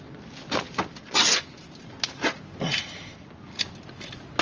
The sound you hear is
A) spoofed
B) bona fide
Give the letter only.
B